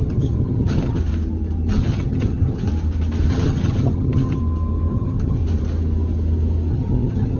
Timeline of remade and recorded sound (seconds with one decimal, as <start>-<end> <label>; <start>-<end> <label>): 0.0-1.0 remade; 1.0-1.7 recorded; 1.7-2.7 remade; 2.7-3.3 recorded; 3.3-4.4 remade; 4.4-4.9 recorded; 4.9-5.4 remade; 5.4-6.7 recorded; 6.7-7.4 remade